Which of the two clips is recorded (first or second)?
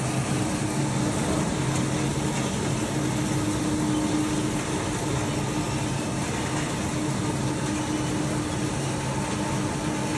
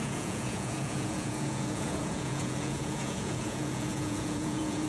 first